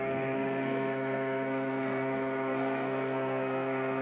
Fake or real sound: fake